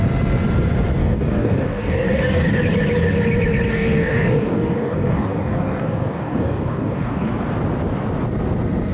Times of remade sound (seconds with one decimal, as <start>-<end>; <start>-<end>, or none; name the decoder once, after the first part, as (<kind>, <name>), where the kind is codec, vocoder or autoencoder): 1.0-2.5 (codec, DAC); 3.7-7.3